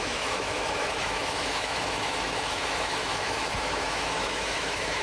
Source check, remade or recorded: remade